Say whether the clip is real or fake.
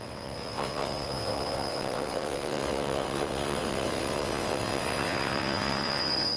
fake